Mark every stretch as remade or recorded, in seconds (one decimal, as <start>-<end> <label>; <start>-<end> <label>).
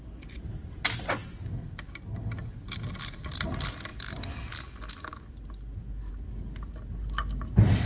0.0-7.9 recorded